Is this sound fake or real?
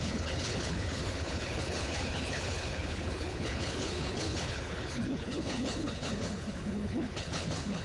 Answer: fake